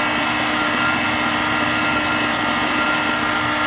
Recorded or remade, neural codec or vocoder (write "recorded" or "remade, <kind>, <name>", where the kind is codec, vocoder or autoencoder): recorded